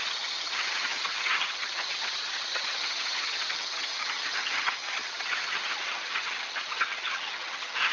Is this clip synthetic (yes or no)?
yes